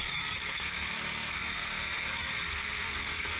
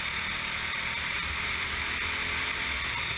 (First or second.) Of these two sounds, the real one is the second